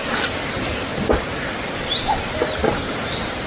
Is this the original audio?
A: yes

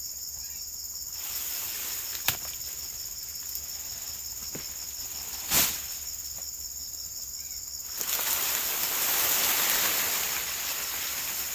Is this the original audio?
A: yes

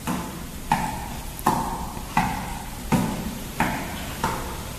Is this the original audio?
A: yes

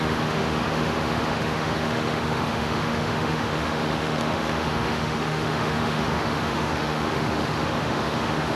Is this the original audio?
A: no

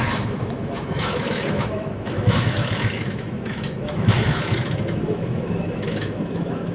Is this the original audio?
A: no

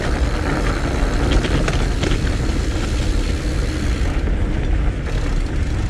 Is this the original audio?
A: yes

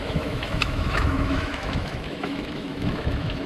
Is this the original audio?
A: no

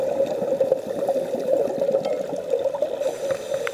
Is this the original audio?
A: yes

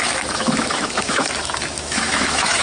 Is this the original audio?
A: no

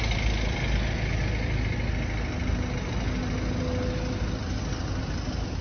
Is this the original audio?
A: yes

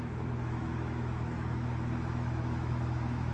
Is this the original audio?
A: no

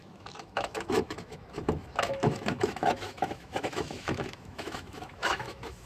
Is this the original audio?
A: no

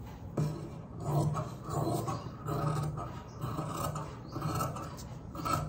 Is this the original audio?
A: yes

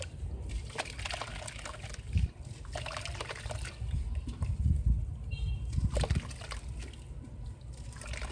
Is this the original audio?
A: yes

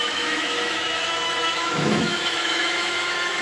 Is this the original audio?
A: no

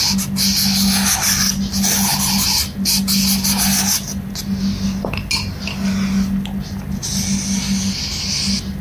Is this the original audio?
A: yes